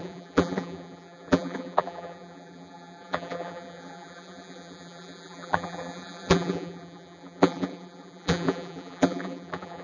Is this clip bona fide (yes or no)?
no